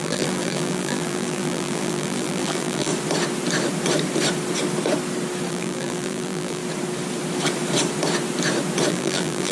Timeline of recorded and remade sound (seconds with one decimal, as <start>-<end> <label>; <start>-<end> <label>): 0.0-2.9 remade; 2.9-5.5 recorded; 5.5-6.6 remade; 6.6-8.9 recorded; 8.9-9.5 remade